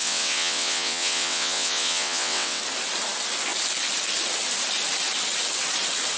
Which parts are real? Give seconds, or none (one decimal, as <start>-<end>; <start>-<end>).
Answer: 2.6-6.2